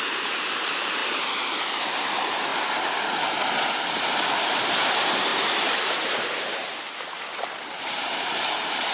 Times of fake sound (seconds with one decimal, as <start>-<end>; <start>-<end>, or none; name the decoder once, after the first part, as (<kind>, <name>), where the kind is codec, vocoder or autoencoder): 0.0-1.0 (vocoder, BigVGAN v2); 2.0-2.5; 4.5-8.9